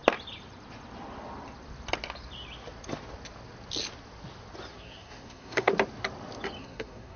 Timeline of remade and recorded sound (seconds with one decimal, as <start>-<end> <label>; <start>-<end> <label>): 0.0-4.7 recorded; 4.7-5.7 remade; 5.7-6.6 recorded; 6.6-7.2 remade